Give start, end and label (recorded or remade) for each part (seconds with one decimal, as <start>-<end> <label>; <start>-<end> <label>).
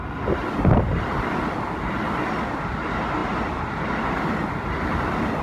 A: 0.0-5.4 recorded